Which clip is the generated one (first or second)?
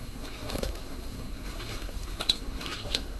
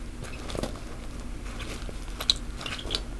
first